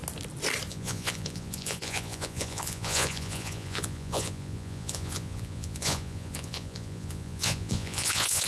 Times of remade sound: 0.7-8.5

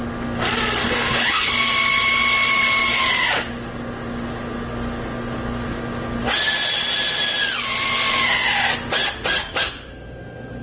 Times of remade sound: 0.8-1.5

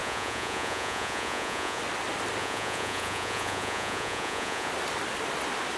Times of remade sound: 0.0-1.8; 2.4-4.7

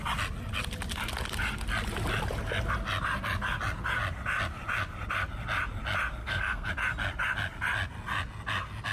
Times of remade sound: 6.2-6.7

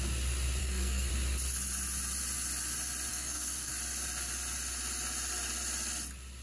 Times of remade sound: 0.6-1.1; 3.1-3.7